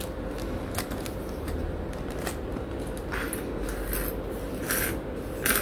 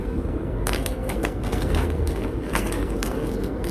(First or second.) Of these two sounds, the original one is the first